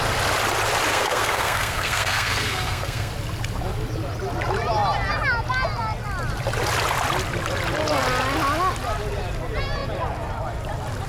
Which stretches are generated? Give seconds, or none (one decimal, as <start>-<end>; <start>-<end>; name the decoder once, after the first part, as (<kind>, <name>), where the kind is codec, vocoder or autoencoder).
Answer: 0.9-3.1 (codec, SNAC)